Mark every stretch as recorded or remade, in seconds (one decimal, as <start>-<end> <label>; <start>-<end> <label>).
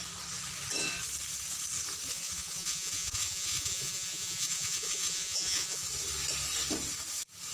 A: 0.0-2.1 recorded; 2.1-5.9 remade; 5.9-7.5 recorded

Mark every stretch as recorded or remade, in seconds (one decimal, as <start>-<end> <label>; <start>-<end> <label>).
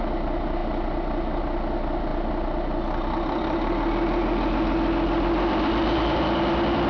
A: 0.0-6.9 recorded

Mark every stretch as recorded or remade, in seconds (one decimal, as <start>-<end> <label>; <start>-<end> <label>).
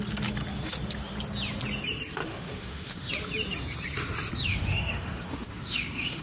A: 0.0-2.2 recorded; 2.2-3.1 remade; 3.1-4.5 recorded; 4.5-6.2 remade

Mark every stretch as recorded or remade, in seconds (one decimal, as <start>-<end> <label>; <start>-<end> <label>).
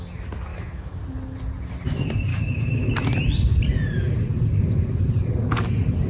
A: 0.0-0.5 recorded; 0.5-1.0 remade; 1.0-2.3 recorded; 2.3-2.9 remade; 2.9-6.1 recorded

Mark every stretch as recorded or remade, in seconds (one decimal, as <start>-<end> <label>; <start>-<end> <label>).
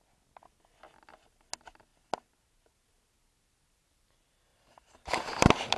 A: 0.0-4.5 recorded; 4.5-5.2 remade; 5.2-5.8 recorded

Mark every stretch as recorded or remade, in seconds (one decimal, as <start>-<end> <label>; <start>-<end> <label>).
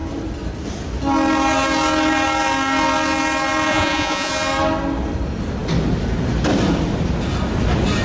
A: 0.0-3.7 recorded; 3.7-4.3 remade; 4.3-8.0 recorded